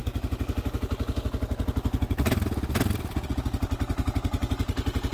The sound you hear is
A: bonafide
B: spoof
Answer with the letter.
A